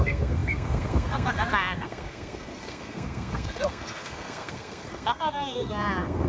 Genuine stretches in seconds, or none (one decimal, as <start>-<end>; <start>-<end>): none